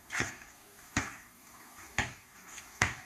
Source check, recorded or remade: remade